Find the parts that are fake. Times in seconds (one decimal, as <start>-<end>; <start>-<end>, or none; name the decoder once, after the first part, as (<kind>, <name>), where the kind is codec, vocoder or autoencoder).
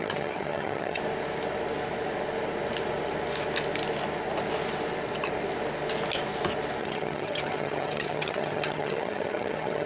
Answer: 0.0-1.0 (vocoder, HiFi-GAN); 6.8-9.9